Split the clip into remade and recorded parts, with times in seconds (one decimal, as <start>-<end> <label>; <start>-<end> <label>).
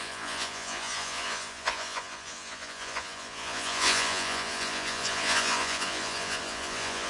0.0-7.1 remade